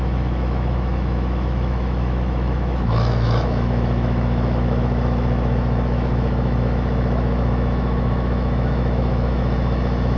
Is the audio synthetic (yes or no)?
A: yes